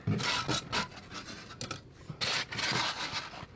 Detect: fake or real real